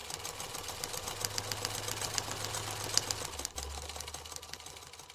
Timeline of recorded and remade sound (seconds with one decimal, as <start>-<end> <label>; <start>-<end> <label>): 0.0-5.1 recorded